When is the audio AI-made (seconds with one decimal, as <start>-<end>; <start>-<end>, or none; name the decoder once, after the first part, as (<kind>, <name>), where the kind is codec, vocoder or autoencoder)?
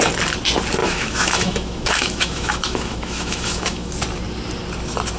0.8-3.9 (autoencoder, DAC-VAE)